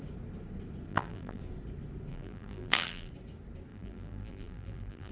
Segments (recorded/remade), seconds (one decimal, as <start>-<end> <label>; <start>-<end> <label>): 0.0-0.9 recorded; 0.9-1.4 remade; 1.4-2.1 recorded; 2.1-3.1 remade; 3.1-3.7 recorded; 3.7-5.1 remade